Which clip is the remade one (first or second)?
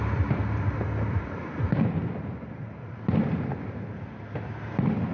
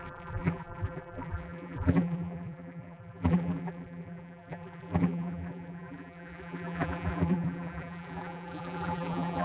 second